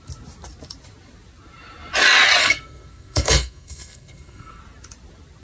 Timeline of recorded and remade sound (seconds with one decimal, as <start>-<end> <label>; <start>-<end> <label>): 0.0-2.4 recorded; 2.4-4.6 remade; 4.6-5.4 recorded